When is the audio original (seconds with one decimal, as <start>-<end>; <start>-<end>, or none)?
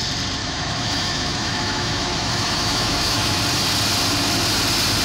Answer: 0.0-0.4; 3.4-5.0